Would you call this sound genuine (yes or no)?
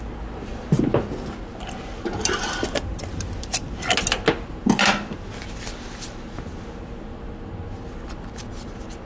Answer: yes